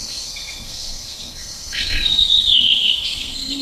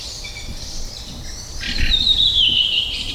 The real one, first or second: second